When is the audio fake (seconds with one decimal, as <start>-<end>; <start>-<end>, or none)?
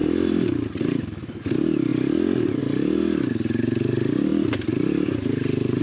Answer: none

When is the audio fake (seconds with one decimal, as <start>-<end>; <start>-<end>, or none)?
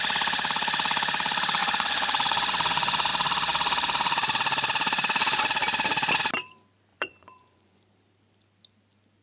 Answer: 1.6-3.1; 6.9-7.8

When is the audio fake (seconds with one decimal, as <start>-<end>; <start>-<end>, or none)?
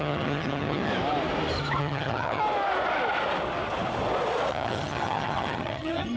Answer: 0.0-0.9; 1.8-2.4; 4.5-6.2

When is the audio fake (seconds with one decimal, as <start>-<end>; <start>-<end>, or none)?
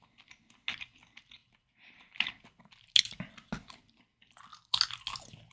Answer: 1.4-2.3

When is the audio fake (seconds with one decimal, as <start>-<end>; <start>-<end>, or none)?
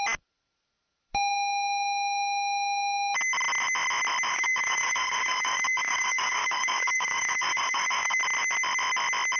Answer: 4.3-8.2